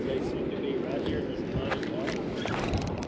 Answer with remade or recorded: recorded